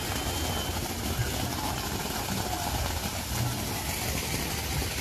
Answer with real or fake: real